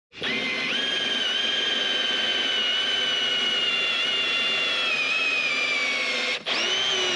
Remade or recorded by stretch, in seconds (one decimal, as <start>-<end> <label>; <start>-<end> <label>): 0.0-7.2 recorded